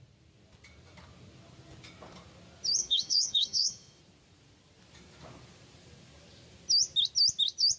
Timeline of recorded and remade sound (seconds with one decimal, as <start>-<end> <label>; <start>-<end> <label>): 0.0-2.8 recorded; 2.8-4.0 remade; 4.0-7.8 recorded